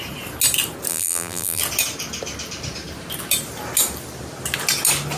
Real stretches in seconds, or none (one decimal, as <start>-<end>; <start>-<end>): 0.0-0.9; 1.6-5.2

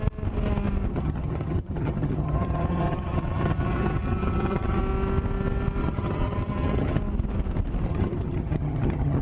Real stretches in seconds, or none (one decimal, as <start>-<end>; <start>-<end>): 0.0-0.9; 4.8-5.8; 7.0-7.9

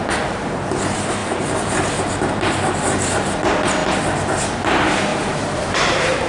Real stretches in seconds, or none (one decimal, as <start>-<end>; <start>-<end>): 0.0-1.2; 2.1-5.1

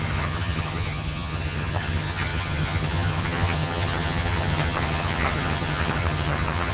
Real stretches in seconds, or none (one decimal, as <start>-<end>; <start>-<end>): none

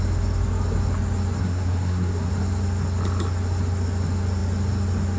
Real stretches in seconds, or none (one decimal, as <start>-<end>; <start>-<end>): 0.0-1.4; 2.3-5.2